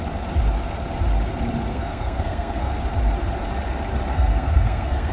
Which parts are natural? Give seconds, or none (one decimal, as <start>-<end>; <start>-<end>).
0.0-1.7; 2.7-4.1